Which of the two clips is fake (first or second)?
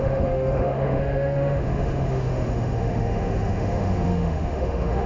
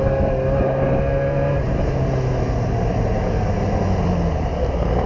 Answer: first